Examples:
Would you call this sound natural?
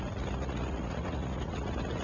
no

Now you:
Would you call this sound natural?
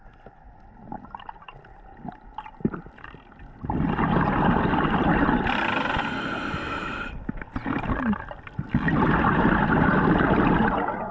yes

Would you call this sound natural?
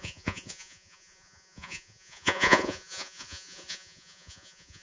no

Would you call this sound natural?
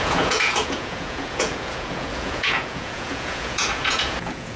no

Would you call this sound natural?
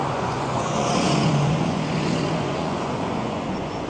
no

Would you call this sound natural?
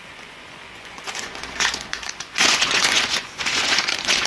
no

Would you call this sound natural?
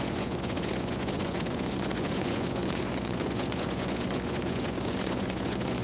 no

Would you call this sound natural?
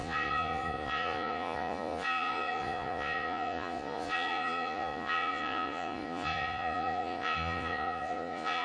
no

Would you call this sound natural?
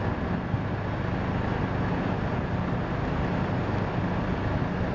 yes